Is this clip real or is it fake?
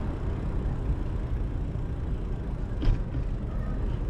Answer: real